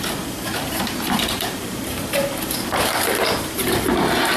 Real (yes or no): no